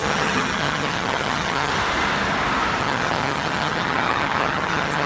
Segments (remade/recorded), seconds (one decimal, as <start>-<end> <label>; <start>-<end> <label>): 0.0-1.7 remade; 1.7-2.8 recorded; 2.8-5.1 remade